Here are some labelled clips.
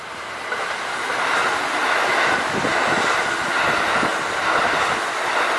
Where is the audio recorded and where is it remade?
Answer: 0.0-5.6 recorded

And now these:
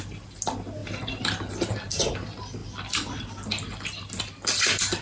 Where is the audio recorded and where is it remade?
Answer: 0.0-5.0 recorded

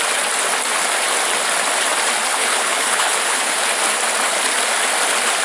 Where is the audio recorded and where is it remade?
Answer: 0.0-2.3 recorded; 2.3-3.6 remade; 3.6-5.4 recorded

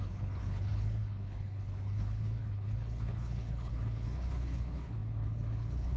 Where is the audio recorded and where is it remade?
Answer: 0.0-6.0 remade